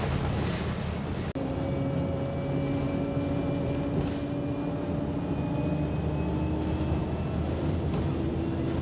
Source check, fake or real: real